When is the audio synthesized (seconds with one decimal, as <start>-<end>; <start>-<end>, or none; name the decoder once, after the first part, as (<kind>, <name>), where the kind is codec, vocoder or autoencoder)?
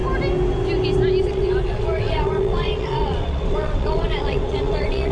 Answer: 1.2-5.1 (vocoder, WaveNeXt)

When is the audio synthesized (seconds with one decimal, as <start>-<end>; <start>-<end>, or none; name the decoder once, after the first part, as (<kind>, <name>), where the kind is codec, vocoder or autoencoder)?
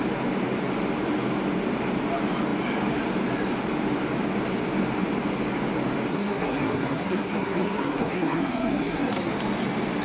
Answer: 6.1-9.3 (codec, SNAC)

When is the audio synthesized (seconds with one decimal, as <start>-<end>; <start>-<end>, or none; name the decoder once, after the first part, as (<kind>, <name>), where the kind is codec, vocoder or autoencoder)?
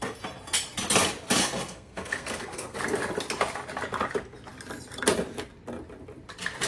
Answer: 1.4-2.8 (codec, SNAC)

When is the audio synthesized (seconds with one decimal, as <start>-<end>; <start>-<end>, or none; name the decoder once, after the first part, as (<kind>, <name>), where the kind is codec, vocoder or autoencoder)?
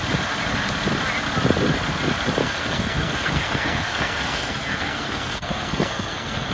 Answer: 2.4-6.5 (codec, SNAC)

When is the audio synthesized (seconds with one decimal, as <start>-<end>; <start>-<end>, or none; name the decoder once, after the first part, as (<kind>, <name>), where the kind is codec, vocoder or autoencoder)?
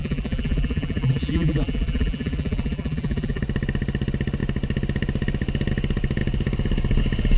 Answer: 0.0-3.4 (vocoder, BigVGAN v2)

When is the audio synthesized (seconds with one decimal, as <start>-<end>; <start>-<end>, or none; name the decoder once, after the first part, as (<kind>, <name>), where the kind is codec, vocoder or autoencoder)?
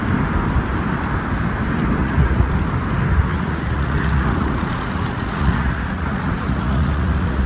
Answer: 2.0-2.5 (vocoder, Vocos); 3.3-7.5